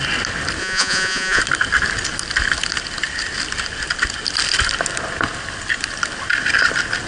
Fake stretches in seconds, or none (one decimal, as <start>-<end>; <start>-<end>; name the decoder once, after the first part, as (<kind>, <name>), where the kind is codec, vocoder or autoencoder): 0.6-1.4 (vocoder, Vocos)